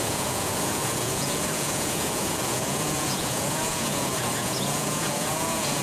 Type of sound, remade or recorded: remade